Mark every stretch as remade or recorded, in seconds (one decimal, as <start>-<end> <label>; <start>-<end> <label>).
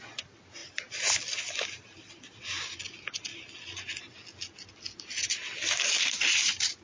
0.0-0.6 recorded; 0.6-1.4 remade; 1.4-6.8 recorded